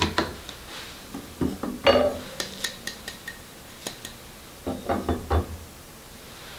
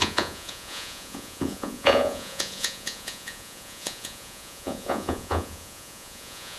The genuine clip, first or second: first